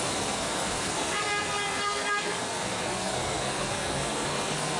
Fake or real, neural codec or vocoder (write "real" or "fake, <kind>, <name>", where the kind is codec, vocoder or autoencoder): fake, codec, SNAC